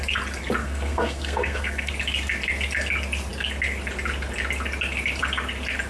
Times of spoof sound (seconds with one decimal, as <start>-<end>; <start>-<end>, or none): 0.6-1.9